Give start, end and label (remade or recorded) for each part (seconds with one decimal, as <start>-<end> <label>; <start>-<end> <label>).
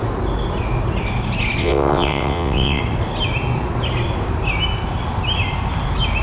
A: 0.0-1.6 recorded; 1.6-2.8 remade; 2.8-6.2 recorded